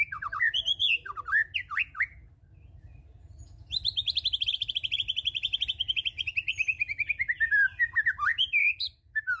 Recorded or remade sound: recorded